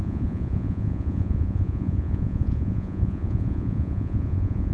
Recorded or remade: remade